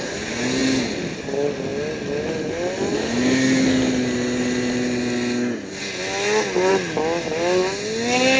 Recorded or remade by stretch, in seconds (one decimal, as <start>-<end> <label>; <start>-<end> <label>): 0.0-8.4 recorded